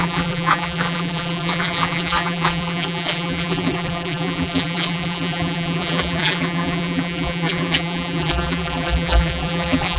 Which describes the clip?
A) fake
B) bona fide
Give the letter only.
A